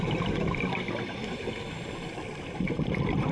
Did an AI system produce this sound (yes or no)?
no